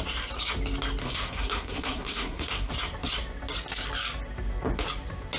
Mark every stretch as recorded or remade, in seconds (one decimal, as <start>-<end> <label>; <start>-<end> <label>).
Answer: 0.0-1.0 recorded; 1.0-2.7 remade; 2.7-5.4 recorded